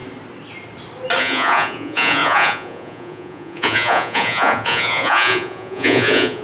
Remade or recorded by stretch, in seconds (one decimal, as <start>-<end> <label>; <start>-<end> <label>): 0.0-1.2 recorded; 1.2-6.4 remade